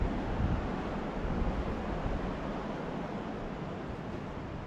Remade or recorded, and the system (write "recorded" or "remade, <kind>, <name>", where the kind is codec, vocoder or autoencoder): recorded